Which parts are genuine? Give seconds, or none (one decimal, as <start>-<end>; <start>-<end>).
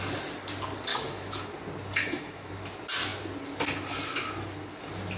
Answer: 0.0-0.9; 1.5-2.0; 2.5-5.2